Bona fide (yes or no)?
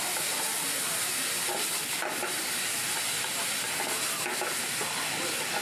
yes